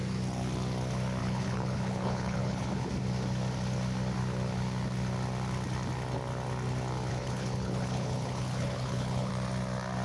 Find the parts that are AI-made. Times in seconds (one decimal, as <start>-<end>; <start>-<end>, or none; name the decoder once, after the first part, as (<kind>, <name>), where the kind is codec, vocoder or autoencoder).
1.2-2.9 (codec, HILCodec); 7.1-9.3